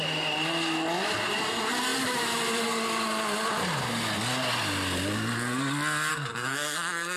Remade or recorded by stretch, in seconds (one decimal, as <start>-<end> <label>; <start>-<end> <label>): 0.0-6.1 recorded; 6.1-7.2 remade

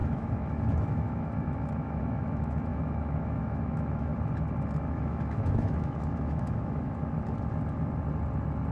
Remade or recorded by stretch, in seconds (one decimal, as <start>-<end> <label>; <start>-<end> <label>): 0.0-4.1 remade; 4.1-4.9 recorded; 4.9-7.0 remade; 7.0-8.7 recorded